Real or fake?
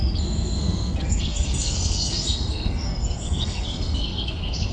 fake